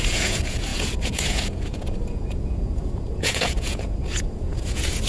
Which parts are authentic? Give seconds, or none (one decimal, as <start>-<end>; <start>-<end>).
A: none